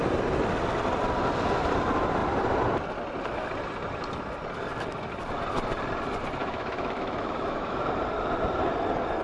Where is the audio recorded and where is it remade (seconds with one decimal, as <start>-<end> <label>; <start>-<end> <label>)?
0.0-6.4 recorded; 6.4-7.9 remade; 7.9-9.2 recorded